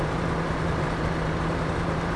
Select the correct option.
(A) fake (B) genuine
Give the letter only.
A